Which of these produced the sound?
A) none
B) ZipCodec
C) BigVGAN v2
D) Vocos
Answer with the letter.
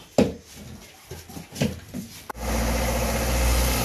A